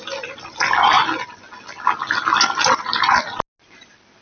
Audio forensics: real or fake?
real